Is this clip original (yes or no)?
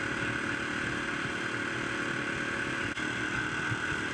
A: yes